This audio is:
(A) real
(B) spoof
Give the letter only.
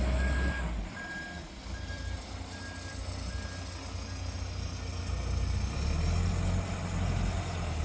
A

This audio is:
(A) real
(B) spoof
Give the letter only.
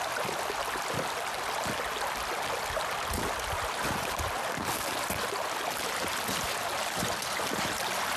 A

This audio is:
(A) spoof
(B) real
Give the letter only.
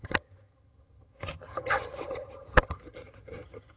A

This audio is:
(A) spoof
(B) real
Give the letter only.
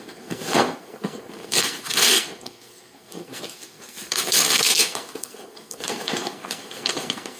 A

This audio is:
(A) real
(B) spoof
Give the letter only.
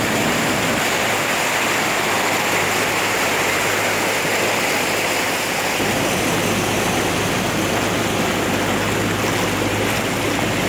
A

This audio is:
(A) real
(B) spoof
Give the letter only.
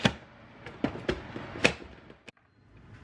A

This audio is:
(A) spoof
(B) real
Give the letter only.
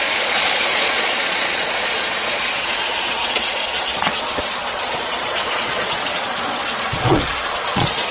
A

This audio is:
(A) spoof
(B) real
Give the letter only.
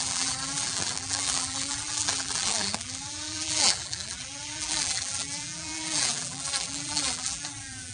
A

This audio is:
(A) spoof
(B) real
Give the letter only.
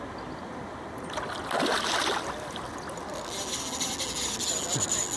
B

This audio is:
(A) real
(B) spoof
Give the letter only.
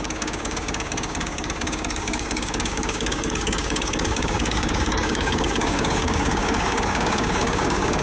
B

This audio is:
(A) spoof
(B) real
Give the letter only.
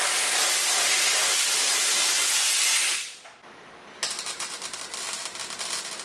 B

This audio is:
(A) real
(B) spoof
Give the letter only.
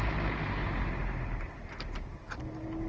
A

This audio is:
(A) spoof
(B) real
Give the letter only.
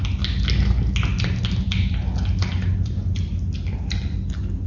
B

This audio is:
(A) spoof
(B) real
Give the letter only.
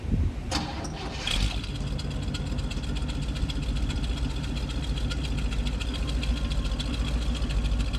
B